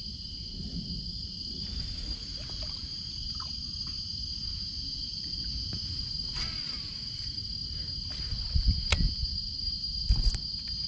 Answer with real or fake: real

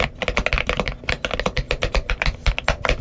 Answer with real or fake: real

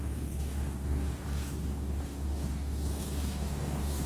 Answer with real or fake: fake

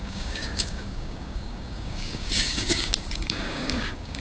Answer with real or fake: fake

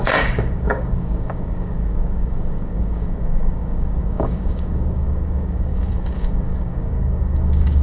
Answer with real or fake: fake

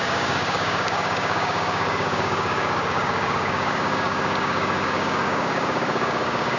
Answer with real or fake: fake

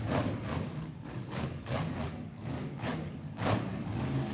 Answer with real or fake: fake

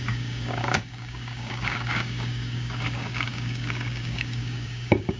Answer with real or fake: fake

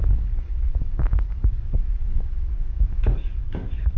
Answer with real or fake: fake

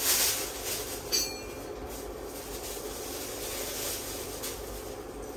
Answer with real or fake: real